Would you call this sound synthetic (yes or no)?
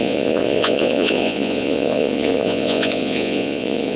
yes